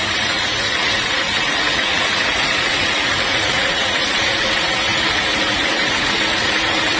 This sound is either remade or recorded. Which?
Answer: remade